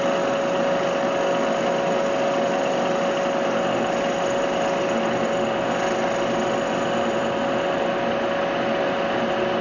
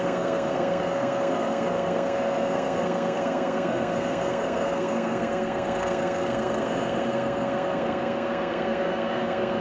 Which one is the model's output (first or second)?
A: second